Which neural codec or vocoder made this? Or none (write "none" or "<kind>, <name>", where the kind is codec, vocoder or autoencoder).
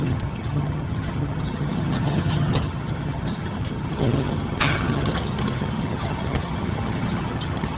vocoder, HiFi-GAN